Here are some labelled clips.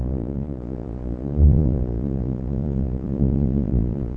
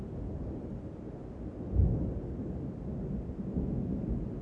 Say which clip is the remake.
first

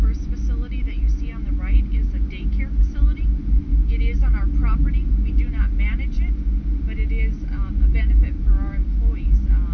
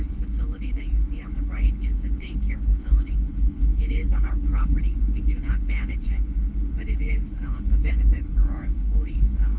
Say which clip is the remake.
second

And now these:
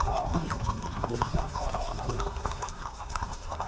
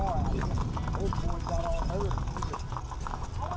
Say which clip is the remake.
first